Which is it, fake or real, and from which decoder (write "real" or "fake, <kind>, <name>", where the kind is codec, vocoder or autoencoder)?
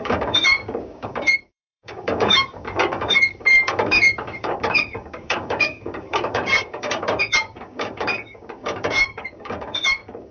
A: fake, codec, DAC